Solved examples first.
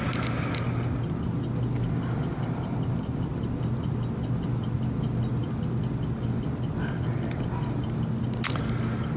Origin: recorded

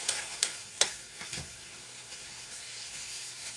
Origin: remade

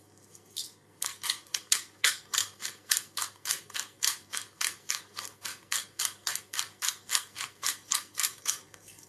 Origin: remade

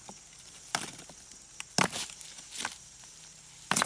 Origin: recorded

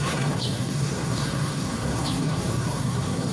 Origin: remade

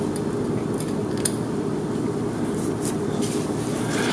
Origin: recorded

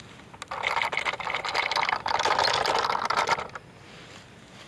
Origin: recorded